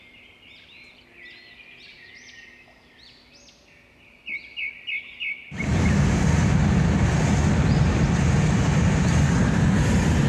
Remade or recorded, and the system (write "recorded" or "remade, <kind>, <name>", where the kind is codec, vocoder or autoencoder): recorded